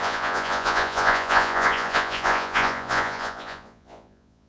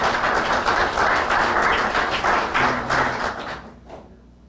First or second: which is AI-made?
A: first